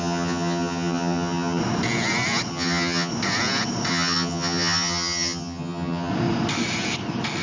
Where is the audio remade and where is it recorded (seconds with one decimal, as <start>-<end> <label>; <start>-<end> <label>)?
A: 0.0-1.6 remade; 1.6-2.5 recorded; 2.5-3.1 remade; 3.1-3.9 recorded; 3.9-6.1 remade; 6.1-7.4 recorded